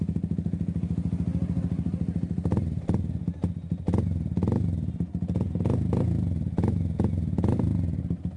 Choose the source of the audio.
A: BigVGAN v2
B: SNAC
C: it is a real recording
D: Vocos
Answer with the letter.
C